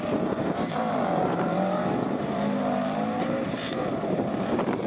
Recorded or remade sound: remade